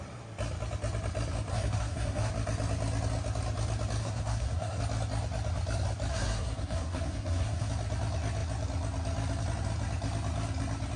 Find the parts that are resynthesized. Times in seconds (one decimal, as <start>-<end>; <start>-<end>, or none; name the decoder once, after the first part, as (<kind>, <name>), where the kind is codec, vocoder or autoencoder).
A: 1.5-2.3 (codec, SNAC); 4.0-4.8; 6.1-7.7